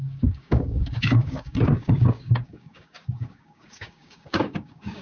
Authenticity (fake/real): fake